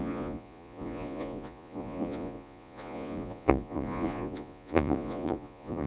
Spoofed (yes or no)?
yes